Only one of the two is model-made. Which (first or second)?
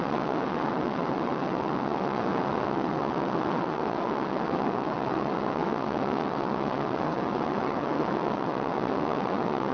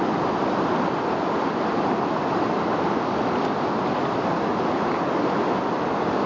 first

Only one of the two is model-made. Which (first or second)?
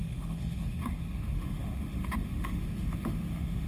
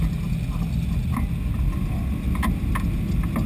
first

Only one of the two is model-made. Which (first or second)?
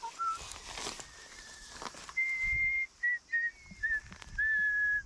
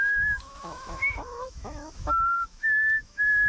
second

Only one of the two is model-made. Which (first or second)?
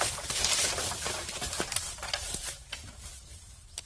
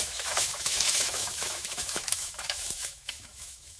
second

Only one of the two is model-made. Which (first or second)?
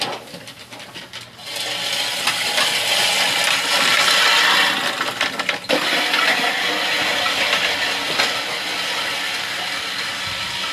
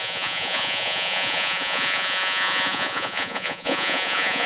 second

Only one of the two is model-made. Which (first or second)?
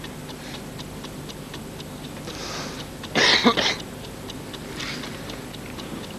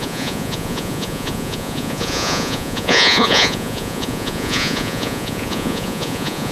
second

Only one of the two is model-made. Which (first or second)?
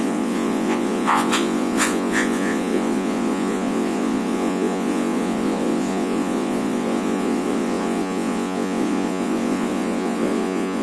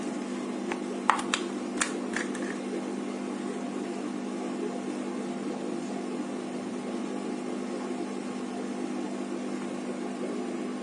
first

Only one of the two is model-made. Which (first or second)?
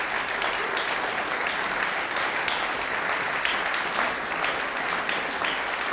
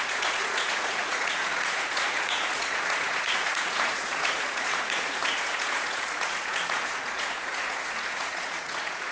second